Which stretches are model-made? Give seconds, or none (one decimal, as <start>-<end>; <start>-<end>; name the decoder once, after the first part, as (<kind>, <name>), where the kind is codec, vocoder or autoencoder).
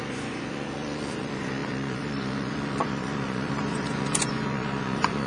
0.0-5.3 (vocoder, Vocos)